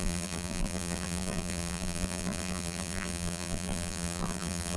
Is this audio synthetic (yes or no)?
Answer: yes